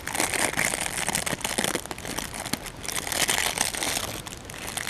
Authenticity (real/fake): real